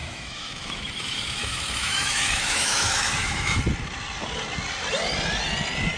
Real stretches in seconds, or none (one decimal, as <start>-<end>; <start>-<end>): 3.6-6.0